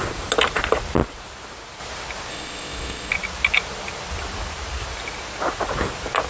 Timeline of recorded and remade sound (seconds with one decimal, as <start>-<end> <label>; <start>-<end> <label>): 0.0-2.3 recorded; 2.3-3.1 remade; 3.1-6.3 recorded